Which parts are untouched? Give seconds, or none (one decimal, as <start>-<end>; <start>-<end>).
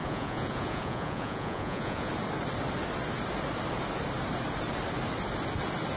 2.1-6.0